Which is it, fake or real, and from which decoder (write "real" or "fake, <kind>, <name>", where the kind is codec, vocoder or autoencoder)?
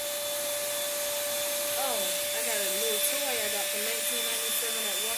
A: real